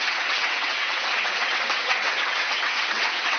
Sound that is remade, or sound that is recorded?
remade